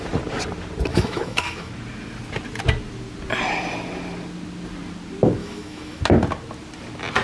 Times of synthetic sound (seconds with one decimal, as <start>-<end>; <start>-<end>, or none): 0.9-1.7; 5.4-6.0